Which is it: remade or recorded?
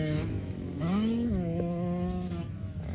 remade